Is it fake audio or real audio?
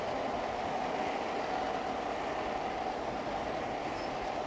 real